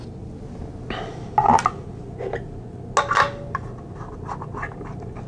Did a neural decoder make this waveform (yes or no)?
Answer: no